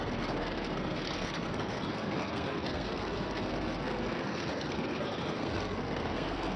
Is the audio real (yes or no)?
no